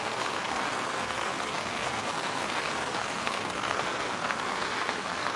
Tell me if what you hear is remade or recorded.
remade